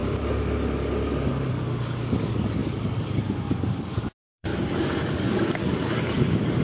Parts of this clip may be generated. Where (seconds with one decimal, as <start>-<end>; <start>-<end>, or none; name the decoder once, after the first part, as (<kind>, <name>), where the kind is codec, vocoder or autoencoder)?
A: 1.5-4.5 (codec, DAC); 5.1-6.6